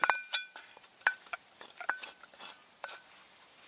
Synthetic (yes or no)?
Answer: yes